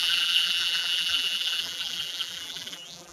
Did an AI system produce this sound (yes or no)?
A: yes